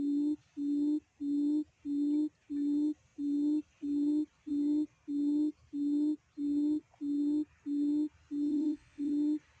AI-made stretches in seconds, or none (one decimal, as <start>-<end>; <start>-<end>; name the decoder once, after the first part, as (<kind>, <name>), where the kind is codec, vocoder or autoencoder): 8.5-9.1 (vocoder, WaveNeXt)